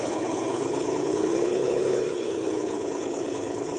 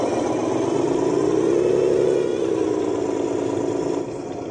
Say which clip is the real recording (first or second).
second